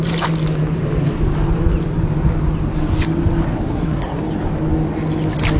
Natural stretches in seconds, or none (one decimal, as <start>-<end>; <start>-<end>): 0.0-3.7; 4.2-5.6